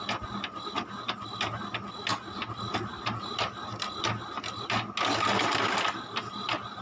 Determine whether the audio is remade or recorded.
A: recorded